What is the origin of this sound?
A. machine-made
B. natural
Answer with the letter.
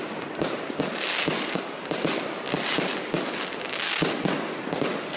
B